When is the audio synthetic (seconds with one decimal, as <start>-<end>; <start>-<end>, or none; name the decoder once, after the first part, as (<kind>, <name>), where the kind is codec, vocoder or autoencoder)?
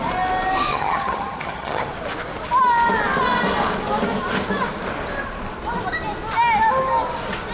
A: 0.7-1.9 (vocoder, HiFi-GAN)